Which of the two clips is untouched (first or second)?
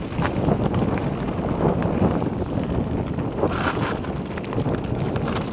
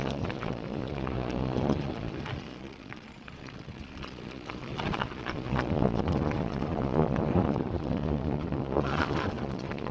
first